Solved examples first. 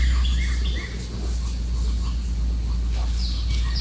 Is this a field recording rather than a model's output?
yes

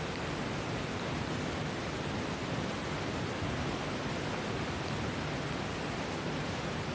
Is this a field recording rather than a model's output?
yes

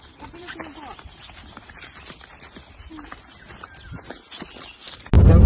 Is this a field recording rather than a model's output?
yes